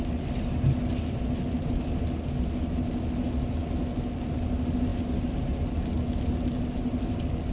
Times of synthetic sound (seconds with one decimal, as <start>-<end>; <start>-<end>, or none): none